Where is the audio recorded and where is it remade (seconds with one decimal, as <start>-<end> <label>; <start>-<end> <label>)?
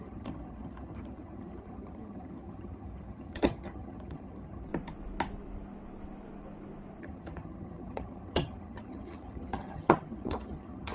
0.0-4.7 remade; 4.7-7.0 recorded; 7.0-10.9 remade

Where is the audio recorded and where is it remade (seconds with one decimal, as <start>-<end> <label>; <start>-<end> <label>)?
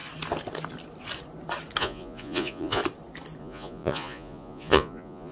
0.0-1.8 recorded; 1.8-2.8 remade; 2.8-3.4 recorded; 3.4-5.3 remade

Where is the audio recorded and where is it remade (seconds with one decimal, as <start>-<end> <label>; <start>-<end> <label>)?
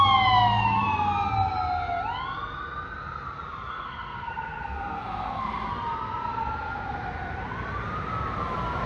0.0-3.7 recorded; 3.7-5.7 remade; 5.7-8.9 recorded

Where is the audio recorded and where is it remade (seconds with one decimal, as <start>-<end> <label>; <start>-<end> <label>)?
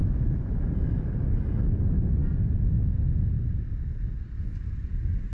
0.0-5.3 recorded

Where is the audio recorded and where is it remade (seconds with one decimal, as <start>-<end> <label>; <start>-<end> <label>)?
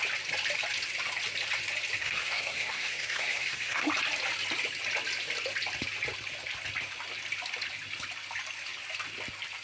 0.0-2.0 recorded; 2.0-3.9 remade; 3.9-9.6 recorded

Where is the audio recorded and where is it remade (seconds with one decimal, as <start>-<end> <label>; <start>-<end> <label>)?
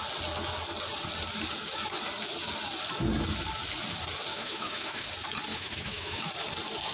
0.0-4.3 recorded; 4.3-5.1 remade; 5.1-5.5 recorded; 5.5-6.3 remade; 6.3-6.9 recorded